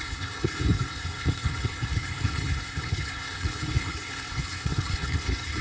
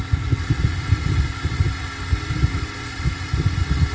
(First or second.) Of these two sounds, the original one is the second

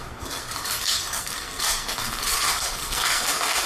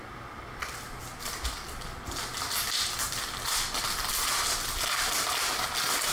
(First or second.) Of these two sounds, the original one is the second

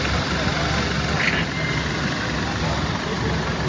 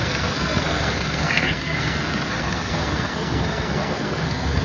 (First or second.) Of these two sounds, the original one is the first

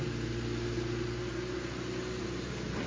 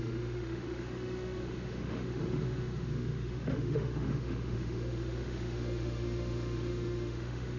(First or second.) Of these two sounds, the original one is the first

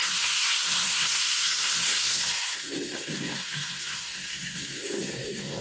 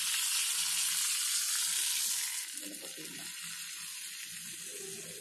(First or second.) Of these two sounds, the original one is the second